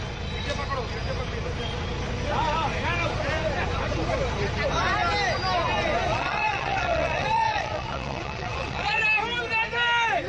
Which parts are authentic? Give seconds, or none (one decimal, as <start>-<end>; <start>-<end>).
0.0-6.1; 9.0-10.3